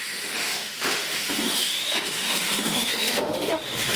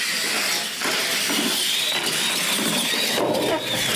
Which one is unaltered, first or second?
second